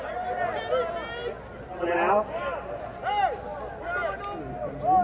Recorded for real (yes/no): yes